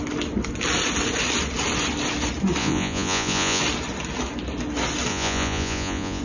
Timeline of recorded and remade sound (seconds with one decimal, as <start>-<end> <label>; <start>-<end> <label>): 0.0-2.6 recorded; 2.6-3.6 remade; 3.6-5.1 recorded; 5.1-6.2 remade